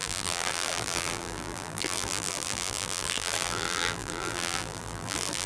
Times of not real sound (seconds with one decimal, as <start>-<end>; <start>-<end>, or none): 0.0-5.5